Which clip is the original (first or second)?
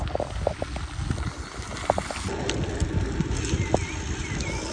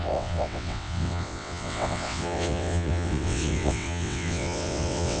first